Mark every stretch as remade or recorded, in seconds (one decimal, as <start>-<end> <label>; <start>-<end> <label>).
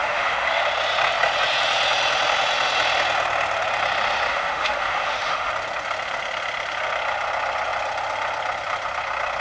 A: 0.0-0.6 remade; 0.6-4.3 recorded; 4.3-5.5 remade; 5.5-9.4 recorded